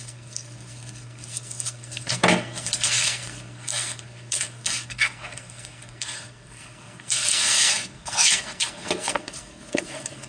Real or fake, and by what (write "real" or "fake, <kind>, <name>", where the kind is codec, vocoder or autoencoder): fake, codec, SNAC